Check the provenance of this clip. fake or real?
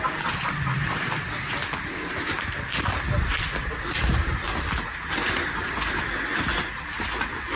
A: real